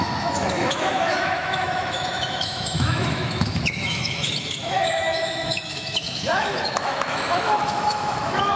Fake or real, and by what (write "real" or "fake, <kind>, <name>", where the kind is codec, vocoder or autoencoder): fake, autoencoder, DAC-VAE